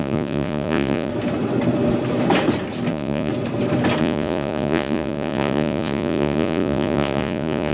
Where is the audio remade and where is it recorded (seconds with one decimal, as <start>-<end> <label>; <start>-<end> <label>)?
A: 0.0-1.1 remade; 1.1-2.9 recorded; 2.9-3.3 remade; 3.3-4.0 recorded; 4.0-7.7 remade